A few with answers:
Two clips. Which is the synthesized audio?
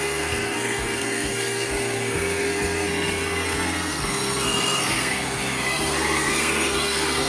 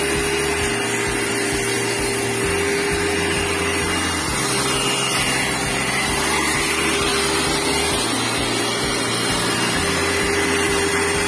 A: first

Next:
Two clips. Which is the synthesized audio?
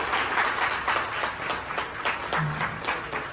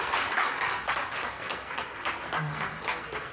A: second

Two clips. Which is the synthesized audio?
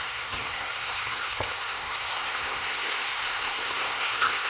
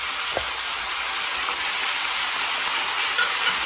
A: first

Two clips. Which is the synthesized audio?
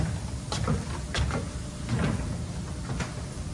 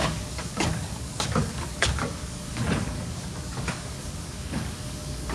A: second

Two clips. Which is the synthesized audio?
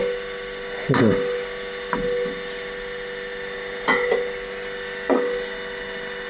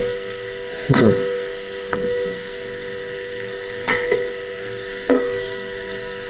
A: second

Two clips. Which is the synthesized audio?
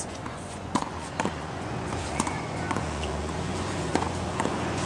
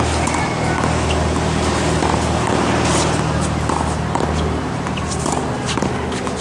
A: first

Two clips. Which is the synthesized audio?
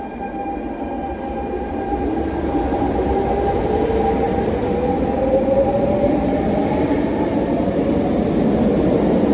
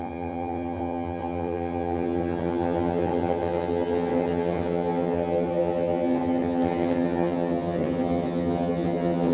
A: second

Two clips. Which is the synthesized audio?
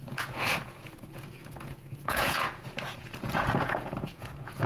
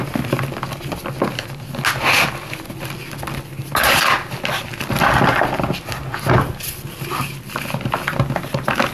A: first